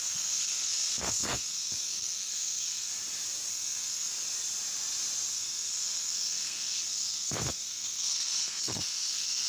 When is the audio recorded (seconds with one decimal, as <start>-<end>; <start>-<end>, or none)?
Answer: 2.9-3.5; 4.1-5.3